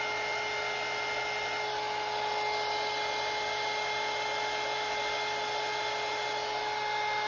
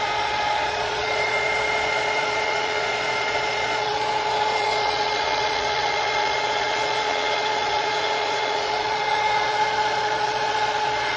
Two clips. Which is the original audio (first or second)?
first